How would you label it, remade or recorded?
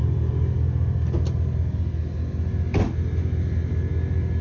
recorded